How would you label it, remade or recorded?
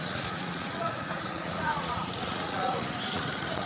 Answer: remade